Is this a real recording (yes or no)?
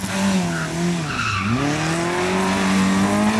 yes